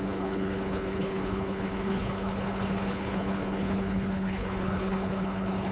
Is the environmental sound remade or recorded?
remade